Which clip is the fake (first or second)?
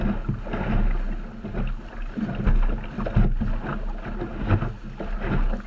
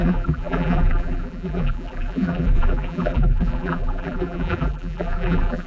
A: second